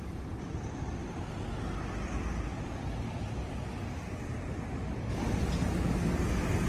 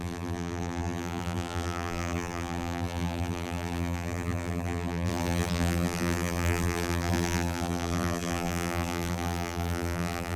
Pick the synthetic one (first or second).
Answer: second